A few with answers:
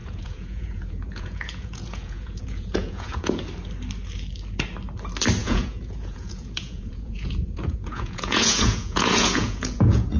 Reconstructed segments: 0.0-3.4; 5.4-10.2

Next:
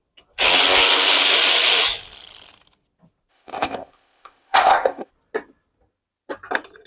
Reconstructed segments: 3.3-5.1

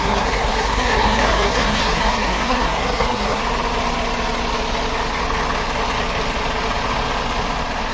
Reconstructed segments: 0.0-3.4

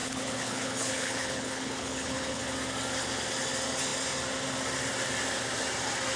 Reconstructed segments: 0.0-2.4

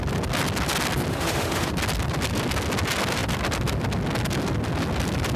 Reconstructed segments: 1.1-1.7